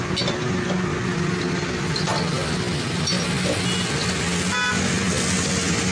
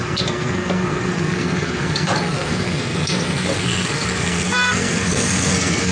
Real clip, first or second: first